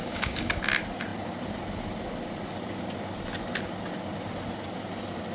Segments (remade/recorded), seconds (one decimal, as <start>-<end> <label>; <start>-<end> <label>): 0.0-0.6 remade; 0.6-5.3 recorded